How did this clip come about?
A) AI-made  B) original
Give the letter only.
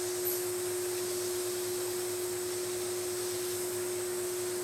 B